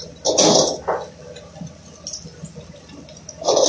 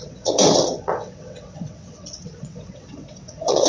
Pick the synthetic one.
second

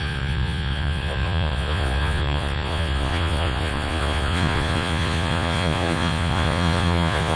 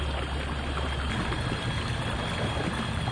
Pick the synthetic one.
first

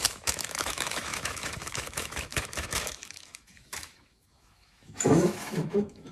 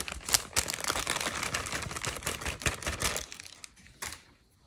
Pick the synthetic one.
first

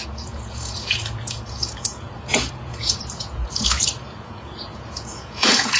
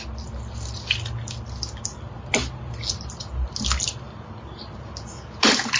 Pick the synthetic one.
first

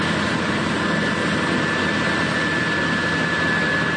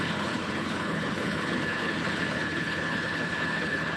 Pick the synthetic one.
second